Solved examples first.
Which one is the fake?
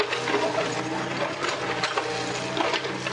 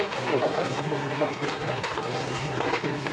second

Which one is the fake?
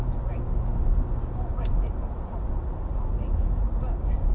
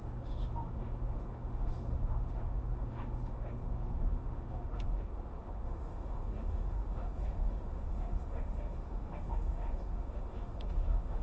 second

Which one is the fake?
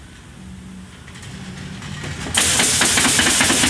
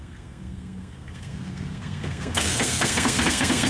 second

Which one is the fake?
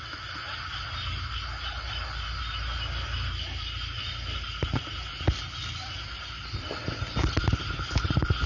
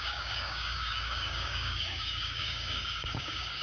second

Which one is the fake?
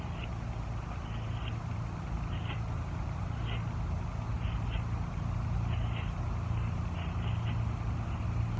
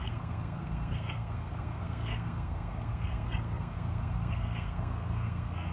second